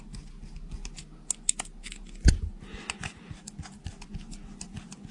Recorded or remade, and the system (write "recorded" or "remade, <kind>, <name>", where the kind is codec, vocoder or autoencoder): recorded